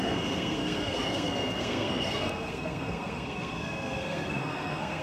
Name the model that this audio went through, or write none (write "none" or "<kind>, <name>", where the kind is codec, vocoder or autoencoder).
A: codec, SNAC